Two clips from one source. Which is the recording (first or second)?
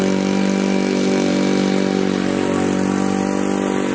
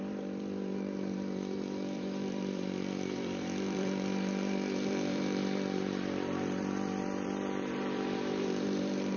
first